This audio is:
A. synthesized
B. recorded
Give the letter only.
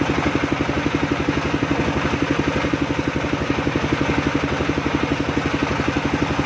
B